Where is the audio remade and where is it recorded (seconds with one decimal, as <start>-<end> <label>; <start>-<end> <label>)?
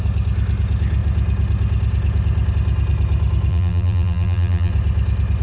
0.0-3.5 recorded; 3.5-4.7 remade; 4.7-5.4 recorded